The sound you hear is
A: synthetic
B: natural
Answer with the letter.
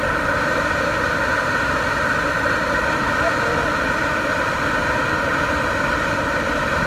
B